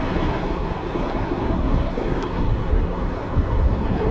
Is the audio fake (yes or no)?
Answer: yes